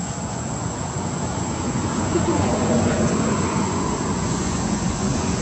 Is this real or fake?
fake